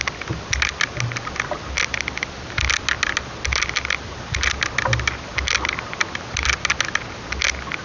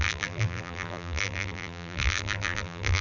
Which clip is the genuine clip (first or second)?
first